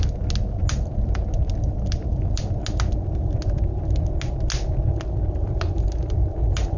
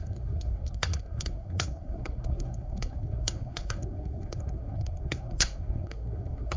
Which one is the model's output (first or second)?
second